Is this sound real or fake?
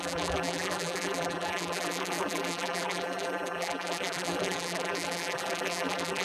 fake